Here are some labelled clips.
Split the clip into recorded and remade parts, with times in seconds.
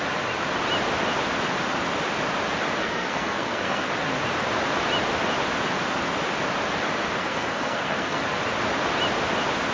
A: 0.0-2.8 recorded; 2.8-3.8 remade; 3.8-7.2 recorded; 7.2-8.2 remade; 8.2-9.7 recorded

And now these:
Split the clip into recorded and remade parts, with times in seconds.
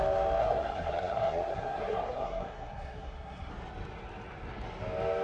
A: 0.0-0.4 recorded; 0.4-3.5 remade; 3.5-5.2 recorded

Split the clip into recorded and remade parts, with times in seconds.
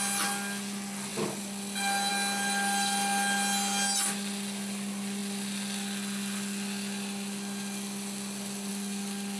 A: 0.0-9.4 recorded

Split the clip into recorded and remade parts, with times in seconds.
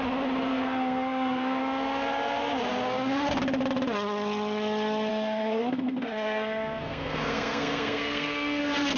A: 0.0-0.5 recorded; 0.5-1.6 remade; 1.6-5.1 recorded; 5.1-8.6 remade; 8.6-9.0 recorded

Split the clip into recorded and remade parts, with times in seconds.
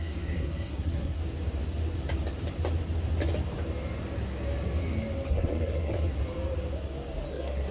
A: 0.0-1.2 remade; 1.2-5.3 recorded; 5.3-6.2 remade; 6.2-7.3 recorded; 7.3-7.7 remade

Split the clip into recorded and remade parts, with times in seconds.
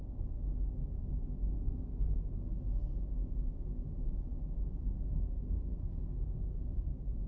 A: 0.0-0.8 remade; 0.8-1.5 recorded; 1.5-2.9 remade; 2.9-4.8 recorded; 4.8-7.3 remade